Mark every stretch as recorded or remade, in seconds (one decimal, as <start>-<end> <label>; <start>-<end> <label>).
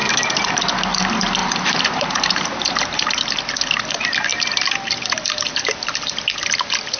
0.0-0.6 remade; 0.6-1.4 recorded; 1.4-3.4 remade; 3.4-4.3 recorded; 4.3-6.3 remade; 6.3-7.0 recorded